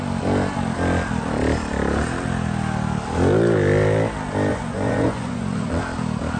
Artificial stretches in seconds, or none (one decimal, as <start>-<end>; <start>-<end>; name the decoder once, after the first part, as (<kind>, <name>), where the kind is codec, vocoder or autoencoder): 4.5-5.8 (vocoder, Vocos)

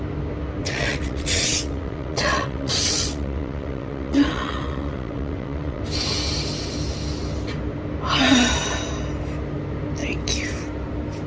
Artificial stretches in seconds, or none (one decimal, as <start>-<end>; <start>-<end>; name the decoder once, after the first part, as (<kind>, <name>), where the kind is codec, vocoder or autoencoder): 0.6-5.8 (vocoder, WaveNeXt)

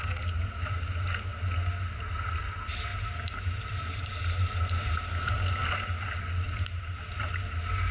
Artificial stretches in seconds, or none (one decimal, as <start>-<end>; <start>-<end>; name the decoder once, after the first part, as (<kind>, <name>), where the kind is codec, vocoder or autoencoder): 2.9-4.1 (vocoder, BigVGAN v2)

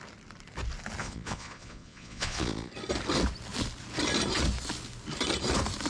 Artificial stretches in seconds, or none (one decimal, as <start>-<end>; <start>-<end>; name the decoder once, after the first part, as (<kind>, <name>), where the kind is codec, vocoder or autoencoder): 1.0-2.7 (vocoder, Vocos)

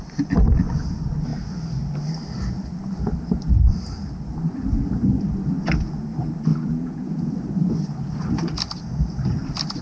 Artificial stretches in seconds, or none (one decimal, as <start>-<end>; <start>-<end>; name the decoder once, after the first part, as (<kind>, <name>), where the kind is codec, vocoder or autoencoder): 6.5-7.3 (vocoder, Vocos)

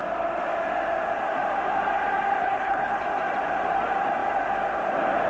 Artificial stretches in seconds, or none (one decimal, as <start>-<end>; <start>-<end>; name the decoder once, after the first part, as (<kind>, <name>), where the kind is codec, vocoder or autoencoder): 2.4-3.0 (codec, HILCodec)